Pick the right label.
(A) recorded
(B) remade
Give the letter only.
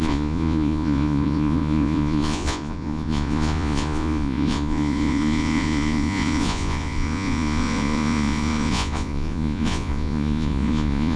B